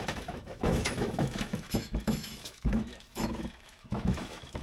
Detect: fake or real fake